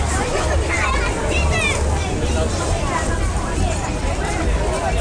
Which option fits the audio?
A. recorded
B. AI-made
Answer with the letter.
A